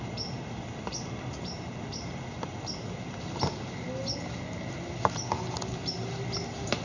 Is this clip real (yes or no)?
yes